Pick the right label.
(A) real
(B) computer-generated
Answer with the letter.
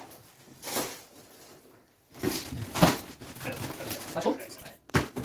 A